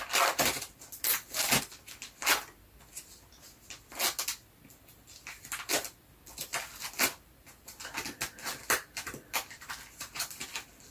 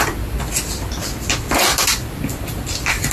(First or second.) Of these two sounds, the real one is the first